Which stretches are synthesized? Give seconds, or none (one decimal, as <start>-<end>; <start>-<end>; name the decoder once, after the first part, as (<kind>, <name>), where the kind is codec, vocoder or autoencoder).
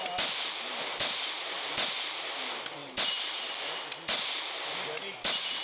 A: none